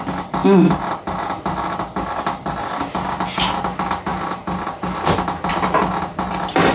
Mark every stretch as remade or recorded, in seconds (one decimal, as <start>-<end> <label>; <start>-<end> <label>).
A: 0.0-6.7 recorded